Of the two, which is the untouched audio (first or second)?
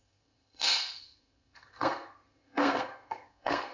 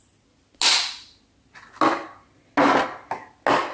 second